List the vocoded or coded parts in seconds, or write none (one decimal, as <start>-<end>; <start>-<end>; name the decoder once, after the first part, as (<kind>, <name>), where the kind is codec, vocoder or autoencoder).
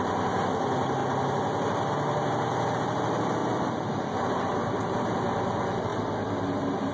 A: none